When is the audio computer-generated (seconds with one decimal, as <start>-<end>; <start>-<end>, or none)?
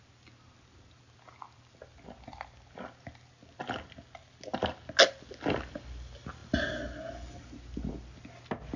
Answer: none